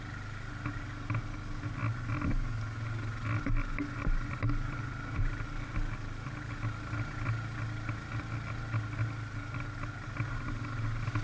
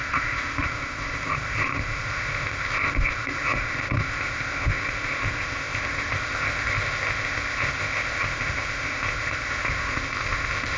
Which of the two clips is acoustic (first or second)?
first